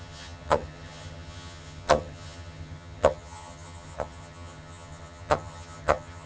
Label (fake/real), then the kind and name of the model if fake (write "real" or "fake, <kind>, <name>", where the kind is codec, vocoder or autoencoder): fake, vocoder, HiFi-GAN